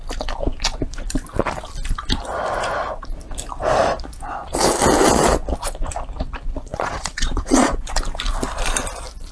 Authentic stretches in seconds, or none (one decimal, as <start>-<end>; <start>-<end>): 0.0-6.7; 7.9-9.3